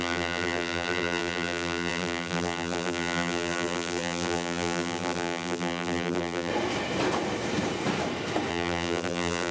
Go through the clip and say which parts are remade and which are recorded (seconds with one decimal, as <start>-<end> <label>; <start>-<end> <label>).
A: 0.0-6.5 remade; 6.5-8.5 recorded; 8.5-9.5 remade